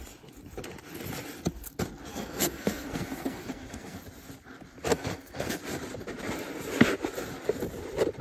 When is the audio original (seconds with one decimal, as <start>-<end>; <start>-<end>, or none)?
0.0-2.1; 4.0-4.9; 5.6-8.2